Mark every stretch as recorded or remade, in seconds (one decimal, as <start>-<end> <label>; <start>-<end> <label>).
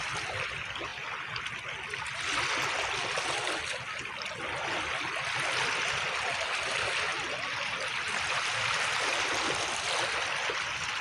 0.0-11.0 recorded